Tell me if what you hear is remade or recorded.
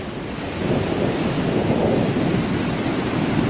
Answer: recorded